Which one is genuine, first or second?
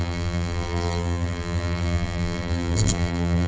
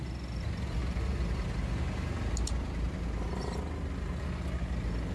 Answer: second